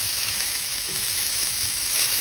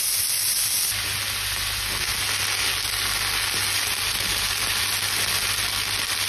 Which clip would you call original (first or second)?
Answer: second